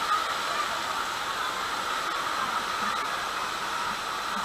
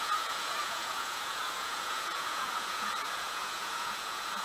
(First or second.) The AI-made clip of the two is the second